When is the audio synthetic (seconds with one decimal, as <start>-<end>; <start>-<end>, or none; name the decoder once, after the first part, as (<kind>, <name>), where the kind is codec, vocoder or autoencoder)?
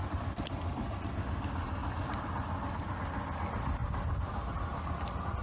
none